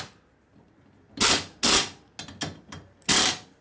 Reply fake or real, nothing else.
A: real